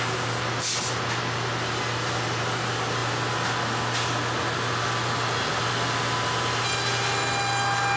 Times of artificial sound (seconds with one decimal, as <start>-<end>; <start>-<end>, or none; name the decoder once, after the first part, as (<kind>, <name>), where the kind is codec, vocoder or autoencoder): none